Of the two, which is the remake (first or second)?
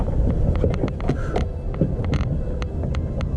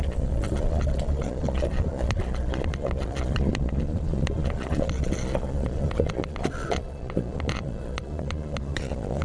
second